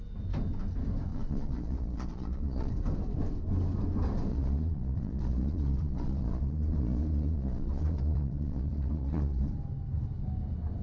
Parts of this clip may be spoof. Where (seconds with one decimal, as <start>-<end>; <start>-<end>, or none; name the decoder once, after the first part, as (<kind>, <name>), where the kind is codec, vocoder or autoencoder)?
1.1-2.7 (vocoder, Vocos); 4.3-9.5